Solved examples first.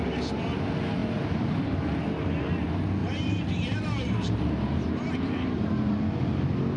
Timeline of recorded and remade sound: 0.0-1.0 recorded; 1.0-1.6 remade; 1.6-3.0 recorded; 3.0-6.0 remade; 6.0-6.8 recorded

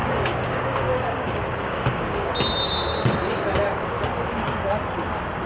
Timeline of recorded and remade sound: 0.0-2.3 remade; 2.3-5.5 recorded

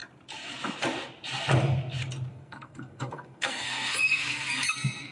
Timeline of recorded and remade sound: 0.0-2.3 recorded; 2.3-5.1 remade

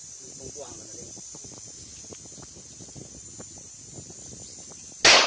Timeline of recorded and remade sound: 0.0-5.3 recorded